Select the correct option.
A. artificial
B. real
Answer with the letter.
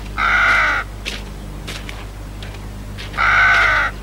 B